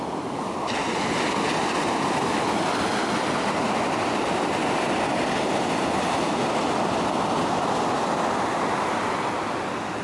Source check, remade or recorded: recorded